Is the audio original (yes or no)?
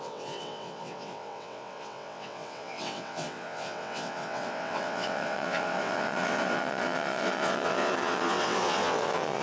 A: no